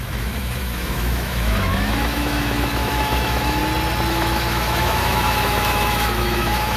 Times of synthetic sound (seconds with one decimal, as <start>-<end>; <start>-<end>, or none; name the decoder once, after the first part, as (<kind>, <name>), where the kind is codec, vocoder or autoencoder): 0.0-3.6 (autoencoder, DAC-VAE); 4.1-6.8